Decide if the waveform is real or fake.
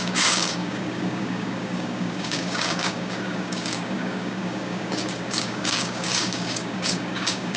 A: fake